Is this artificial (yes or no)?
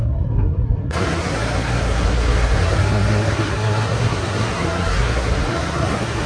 yes